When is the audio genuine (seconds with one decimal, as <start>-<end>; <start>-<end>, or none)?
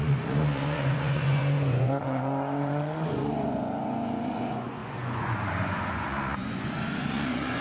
none